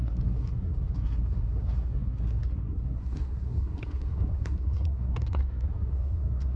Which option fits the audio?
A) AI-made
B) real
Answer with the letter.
A